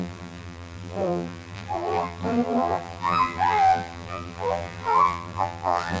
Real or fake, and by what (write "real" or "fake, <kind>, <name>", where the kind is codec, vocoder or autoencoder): fake, vocoder, BigVGAN v2